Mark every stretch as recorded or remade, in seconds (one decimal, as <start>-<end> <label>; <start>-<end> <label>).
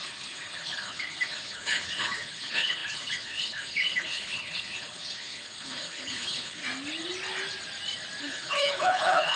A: 0.0-6.6 remade; 6.6-8.2 recorded; 8.2-9.4 remade